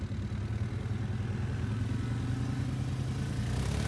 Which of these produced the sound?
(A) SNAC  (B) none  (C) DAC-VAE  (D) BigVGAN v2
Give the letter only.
B